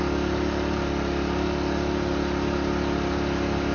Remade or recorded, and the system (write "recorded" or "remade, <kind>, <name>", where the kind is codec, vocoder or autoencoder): recorded